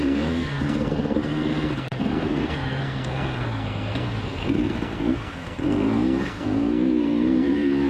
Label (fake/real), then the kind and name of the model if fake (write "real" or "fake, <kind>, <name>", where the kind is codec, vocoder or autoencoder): fake, codec, SNAC